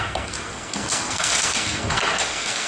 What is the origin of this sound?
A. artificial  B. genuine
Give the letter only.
A